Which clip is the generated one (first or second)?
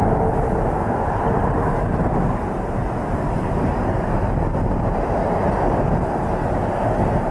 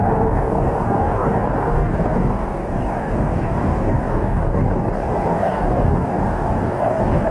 second